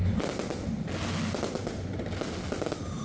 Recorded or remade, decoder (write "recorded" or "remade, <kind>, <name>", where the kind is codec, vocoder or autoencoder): recorded